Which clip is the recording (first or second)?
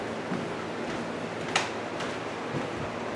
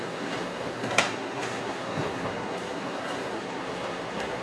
first